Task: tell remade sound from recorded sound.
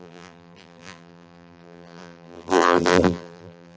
remade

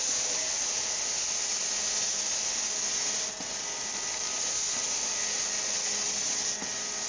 recorded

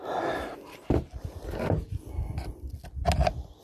recorded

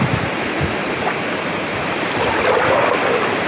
recorded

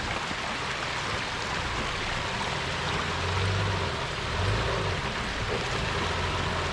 recorded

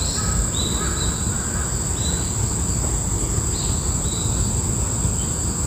recorded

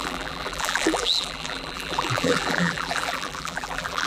remade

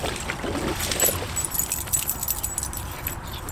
remade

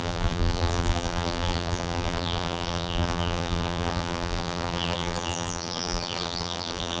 remade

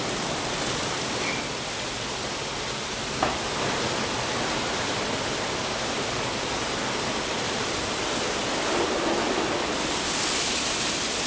remade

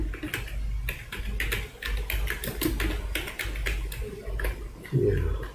recorded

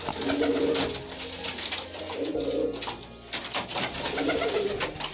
recorded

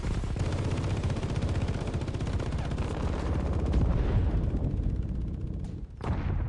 remade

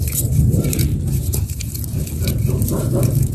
remade